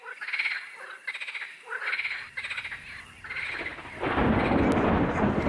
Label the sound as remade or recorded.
recorded